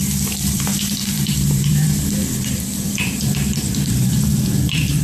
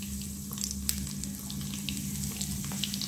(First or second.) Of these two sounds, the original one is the second